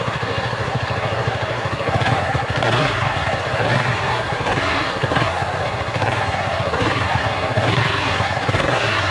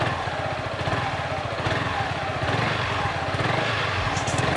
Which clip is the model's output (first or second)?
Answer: first